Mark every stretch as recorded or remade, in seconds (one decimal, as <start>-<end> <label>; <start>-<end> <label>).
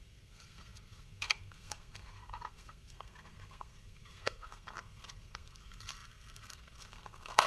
0.0-7.5 remade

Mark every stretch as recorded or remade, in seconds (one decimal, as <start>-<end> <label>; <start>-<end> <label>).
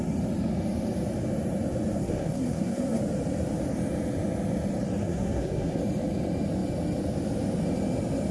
0.0-2.0 recorded; 2.0-3.0 remade; 3.0-5.0 recorded; 5.0-5.8 remade; 5.8-8.3 recorded